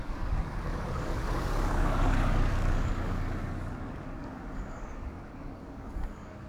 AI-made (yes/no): yes